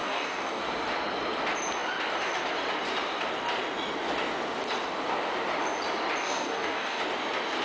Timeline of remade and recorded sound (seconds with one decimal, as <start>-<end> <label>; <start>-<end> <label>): 0.0-0.6 remade; 0.6-6.2 recorded; 6.2-7.0 remade; 7.0-7.6 recorded